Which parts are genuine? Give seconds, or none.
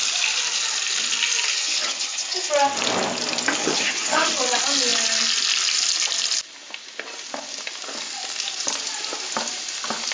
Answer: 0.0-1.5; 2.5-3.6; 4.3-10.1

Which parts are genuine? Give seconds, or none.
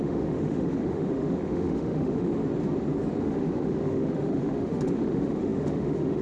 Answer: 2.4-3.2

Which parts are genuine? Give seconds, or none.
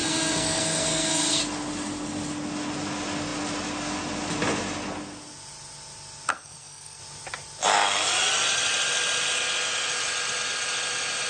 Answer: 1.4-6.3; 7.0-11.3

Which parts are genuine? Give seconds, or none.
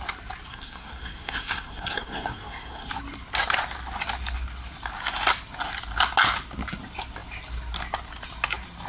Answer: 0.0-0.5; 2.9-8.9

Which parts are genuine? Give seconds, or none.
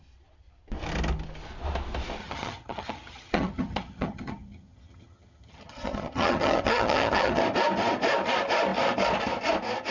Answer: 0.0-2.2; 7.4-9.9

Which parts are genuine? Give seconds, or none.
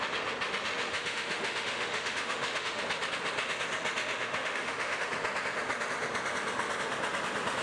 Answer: 0.0-0.9; 2.8-4.0; 5.1-7.6